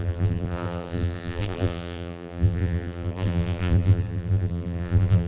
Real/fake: fake